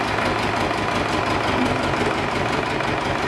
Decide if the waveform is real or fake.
real